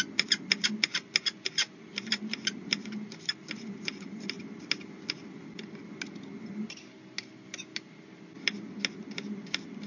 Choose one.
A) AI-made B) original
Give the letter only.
B